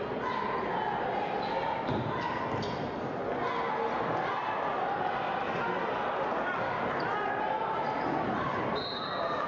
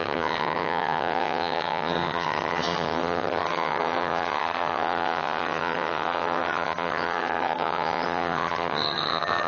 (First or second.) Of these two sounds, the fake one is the second